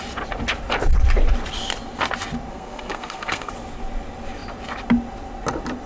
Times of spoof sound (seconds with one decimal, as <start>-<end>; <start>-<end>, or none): 2.5-3.5